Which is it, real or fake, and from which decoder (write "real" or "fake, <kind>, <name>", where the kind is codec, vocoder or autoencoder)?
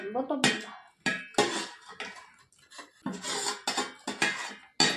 real